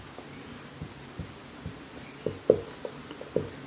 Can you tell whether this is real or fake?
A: real